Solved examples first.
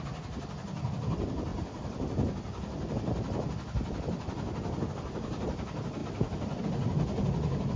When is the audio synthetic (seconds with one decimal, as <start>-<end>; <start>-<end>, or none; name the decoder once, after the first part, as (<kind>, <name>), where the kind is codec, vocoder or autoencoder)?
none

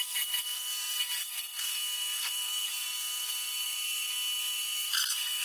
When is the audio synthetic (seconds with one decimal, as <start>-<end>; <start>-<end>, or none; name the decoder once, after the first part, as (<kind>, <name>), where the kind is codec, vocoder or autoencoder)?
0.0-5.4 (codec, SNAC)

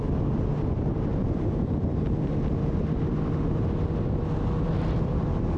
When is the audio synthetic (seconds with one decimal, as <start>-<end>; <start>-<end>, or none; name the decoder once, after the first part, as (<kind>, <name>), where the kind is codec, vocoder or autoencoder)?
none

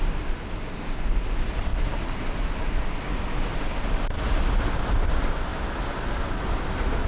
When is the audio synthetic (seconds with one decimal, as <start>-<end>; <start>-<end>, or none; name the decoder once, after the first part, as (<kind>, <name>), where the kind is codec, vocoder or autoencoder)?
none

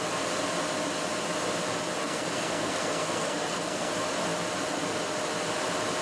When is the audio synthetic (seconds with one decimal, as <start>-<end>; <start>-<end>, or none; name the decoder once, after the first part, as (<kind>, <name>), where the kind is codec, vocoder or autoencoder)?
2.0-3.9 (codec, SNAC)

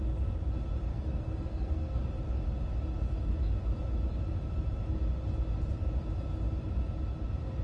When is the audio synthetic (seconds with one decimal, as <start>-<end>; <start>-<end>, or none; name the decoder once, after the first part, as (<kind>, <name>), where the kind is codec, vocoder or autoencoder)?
0.9-2.0 (codec, SNAC)

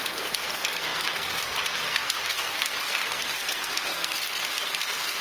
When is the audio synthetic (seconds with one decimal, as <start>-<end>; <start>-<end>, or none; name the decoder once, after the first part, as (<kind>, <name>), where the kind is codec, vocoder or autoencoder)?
0.0-5.2 (codec, SNAC)

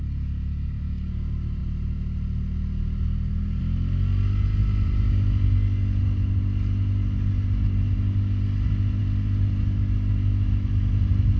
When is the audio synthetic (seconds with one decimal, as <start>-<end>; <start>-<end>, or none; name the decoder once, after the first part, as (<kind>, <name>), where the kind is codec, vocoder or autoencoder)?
none